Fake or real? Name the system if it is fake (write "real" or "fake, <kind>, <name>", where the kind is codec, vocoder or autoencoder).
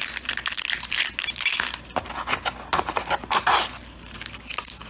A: real